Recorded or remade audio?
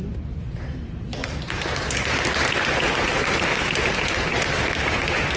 recorded